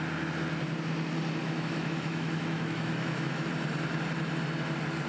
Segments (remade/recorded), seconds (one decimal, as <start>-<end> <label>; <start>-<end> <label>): 0.0-1.4 recorded; 1.4-3.5 remade; 3.5-5.1 recorded